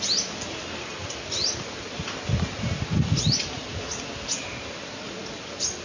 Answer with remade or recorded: recorded